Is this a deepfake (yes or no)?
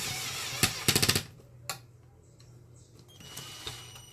no